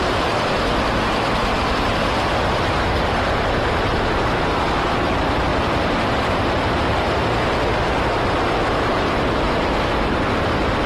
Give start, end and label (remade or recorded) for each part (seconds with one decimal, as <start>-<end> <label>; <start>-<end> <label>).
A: 0.0-10.9 remade